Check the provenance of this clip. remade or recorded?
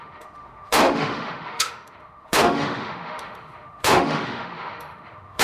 remade